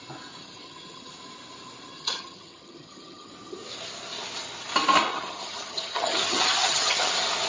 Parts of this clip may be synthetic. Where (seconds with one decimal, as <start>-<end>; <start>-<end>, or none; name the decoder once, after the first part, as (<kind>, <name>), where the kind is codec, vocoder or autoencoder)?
0.4-1.1 (vocoder, HiFi-GAN); 1.9-3.3; 5.1-7.1